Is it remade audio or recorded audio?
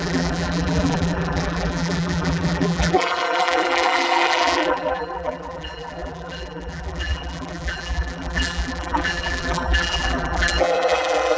remade